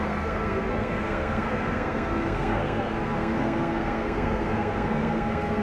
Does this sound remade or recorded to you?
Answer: remade